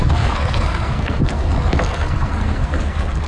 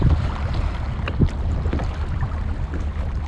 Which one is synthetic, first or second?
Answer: first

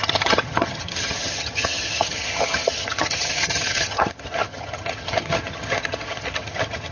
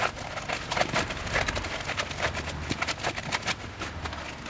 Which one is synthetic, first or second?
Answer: first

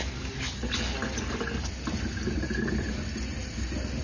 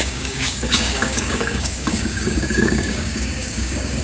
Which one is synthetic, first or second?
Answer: second